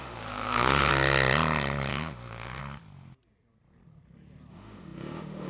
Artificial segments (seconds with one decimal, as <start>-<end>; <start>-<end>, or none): 0.0-0.9; 1.9-2.6; 4.5-5.5